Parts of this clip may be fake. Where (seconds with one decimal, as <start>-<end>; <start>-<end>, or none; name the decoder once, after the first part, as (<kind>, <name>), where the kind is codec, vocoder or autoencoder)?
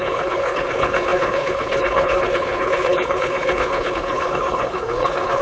0.0-5.4 (codec, HILCodec)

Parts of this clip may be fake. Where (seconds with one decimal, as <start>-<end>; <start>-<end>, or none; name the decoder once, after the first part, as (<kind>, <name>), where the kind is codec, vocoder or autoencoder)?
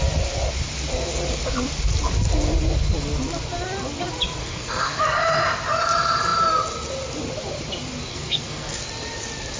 4.4-5.0 (codec, SNAC); 8.1-8.8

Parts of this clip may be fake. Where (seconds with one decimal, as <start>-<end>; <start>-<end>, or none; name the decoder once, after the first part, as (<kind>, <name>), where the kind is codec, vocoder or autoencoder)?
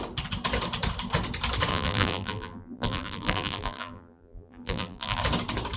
1.7-5.2 (vocoder, BigVGAN v2)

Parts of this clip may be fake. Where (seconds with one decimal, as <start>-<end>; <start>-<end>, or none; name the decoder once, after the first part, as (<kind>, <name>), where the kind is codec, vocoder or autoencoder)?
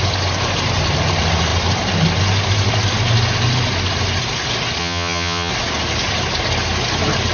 4.8-5.5 (vocoder, HiFi-GAN)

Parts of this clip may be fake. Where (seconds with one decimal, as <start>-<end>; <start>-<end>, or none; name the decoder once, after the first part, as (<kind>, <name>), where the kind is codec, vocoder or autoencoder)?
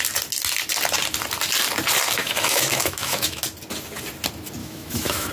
2.2-3.4 (autoencoder, DAC-VAE); 4.6-5.3